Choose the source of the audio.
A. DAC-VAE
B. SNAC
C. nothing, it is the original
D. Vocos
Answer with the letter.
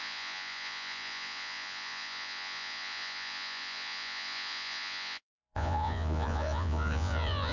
D